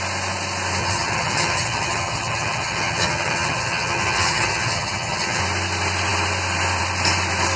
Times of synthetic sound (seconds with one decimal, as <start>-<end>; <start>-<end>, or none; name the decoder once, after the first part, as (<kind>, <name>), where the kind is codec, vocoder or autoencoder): 0.8-5.4 (vocoder, HiFi-GAN)